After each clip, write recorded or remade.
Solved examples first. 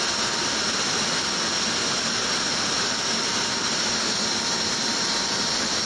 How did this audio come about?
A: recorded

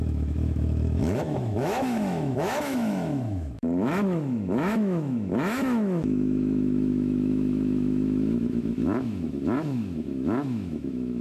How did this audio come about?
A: remade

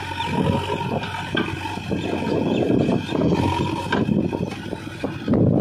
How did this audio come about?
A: recorded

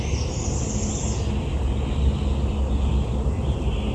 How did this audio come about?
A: recorded